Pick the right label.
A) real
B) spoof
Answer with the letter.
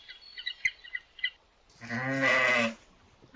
A